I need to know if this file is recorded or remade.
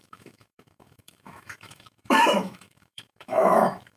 remade